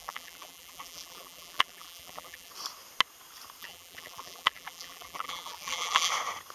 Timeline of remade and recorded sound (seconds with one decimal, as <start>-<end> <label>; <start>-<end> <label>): 0.0-2.5 remade; 2.5-3.6 recorded; 3.6-6.1 remade; 6.1-6.5 recorded

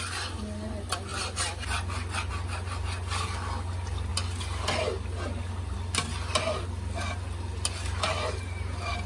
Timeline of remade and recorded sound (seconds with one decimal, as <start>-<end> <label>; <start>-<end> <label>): 0.0-9.1 recorded

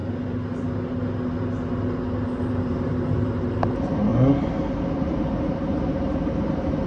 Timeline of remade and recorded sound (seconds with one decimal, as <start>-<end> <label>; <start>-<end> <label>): 0.0-2.5 recorded; 2.5-4.1 remade; 4.1-5.0 recorded; 5.0-6.9 remade

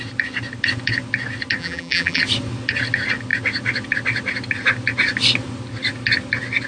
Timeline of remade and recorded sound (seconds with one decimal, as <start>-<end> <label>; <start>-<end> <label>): 0.0-1.6 recorded; 1.6-2.2 remade; 2.2-6.7 recorded

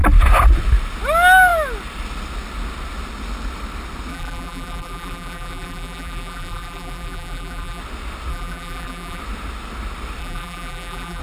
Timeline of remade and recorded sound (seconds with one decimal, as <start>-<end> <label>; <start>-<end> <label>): 0.0-4.1 recorded; 4.1-7.8 remade; 7.8-8.3 recorded; 8.3-9.2 remade; 9.2-10.2 recorded; 10.2-11.2 remade